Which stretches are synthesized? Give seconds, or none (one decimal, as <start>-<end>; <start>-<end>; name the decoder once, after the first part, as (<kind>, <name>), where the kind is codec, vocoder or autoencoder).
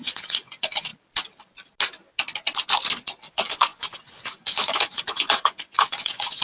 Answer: 0.0-0.9 (vocoder, Vocos); 3.3-6.4